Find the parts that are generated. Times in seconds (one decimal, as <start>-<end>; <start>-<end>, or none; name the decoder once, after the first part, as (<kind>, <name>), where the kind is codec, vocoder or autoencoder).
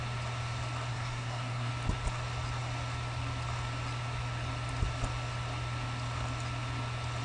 0.9-1.7 (codec, SNAC)